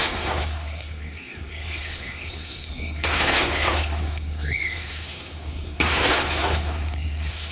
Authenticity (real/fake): fake